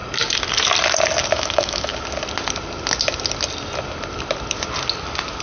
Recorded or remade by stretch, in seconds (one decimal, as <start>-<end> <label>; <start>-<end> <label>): 0.0-1.3 recorded; 1.3-1.9 remade; 1.9-5.4 recorded

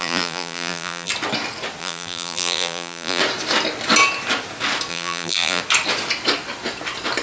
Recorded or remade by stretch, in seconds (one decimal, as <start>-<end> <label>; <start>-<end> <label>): 0.0-1.1 remade; 1.1-1.8 recorded; 1.8-3.2 remade; 3.2-4.9 recorded; 4.9-5.6 remade; 5.6-7.2 recorded

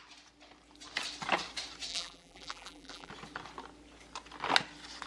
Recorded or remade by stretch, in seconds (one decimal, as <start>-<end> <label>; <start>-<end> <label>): 0.0-1.9 recorded; 1.9-3.1 remade; 3.1-5.1 recorded